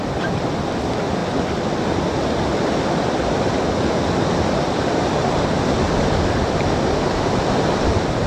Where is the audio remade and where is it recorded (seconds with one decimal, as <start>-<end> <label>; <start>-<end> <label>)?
0.0-8.3 recorded